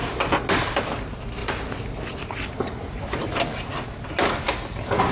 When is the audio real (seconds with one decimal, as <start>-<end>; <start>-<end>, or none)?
0.0-5.1